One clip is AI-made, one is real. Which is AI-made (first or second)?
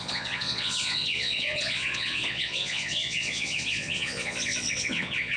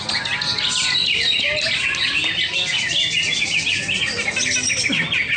first